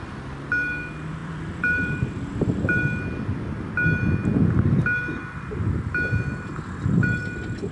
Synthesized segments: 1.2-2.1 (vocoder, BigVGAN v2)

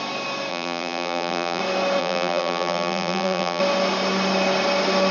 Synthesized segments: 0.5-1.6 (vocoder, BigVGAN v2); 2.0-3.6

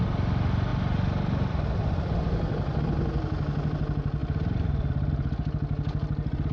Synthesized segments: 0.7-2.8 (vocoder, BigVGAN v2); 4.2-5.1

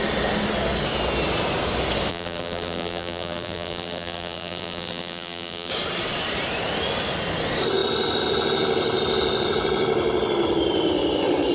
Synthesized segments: 2.1-5.7 (vocoder, BigVGAN v2)

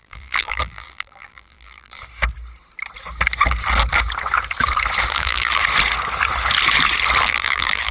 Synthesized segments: 0.0-2.0 (vocoder, BigVGAN v2); 5.1-5.6; 7.2-7.9

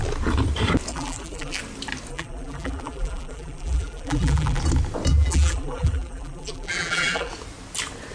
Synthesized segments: 0.9-1.6 (vocoder, BigVGAN v2); 2.1-4.6; 5.1-7.3

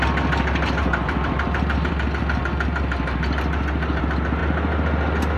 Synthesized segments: 0.8-1.9 (vocoder, BigVGAN v2)